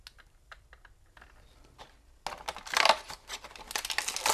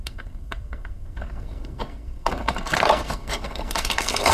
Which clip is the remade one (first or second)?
second